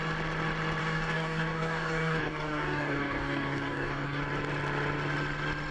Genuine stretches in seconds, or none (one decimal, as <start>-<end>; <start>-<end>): 0.0-0.8; 4.2-5.7